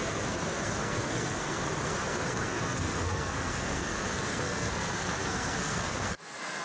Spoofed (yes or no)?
yes